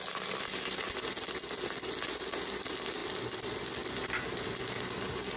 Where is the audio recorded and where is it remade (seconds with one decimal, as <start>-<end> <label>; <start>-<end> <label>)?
0.0-5.4 recorded